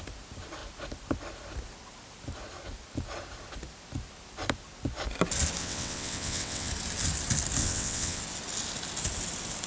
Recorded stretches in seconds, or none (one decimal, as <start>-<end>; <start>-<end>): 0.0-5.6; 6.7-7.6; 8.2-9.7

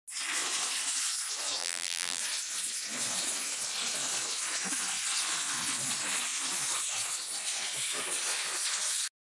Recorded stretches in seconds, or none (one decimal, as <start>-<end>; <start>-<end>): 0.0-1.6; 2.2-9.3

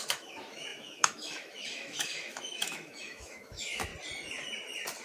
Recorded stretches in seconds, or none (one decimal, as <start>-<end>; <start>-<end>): 3.9-5.0

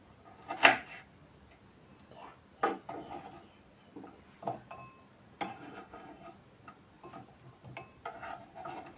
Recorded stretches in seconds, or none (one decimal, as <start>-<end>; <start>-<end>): 0.0-5.5; 6.3-9.0

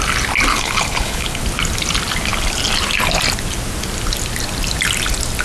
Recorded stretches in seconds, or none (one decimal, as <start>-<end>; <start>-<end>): 0.0-0.5; 1.4-5.4